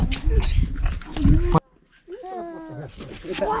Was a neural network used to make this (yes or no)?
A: no